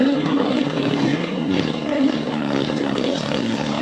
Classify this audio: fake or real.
fake